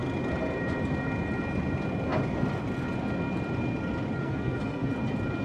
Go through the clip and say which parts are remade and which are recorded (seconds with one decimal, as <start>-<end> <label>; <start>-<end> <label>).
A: 0.0-4.2 recorded; 4.2-4.9 remade; 4.9-5.4 recorded